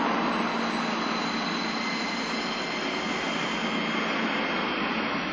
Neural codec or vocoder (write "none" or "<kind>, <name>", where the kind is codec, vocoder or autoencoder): none